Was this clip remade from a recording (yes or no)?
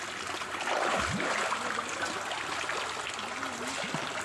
no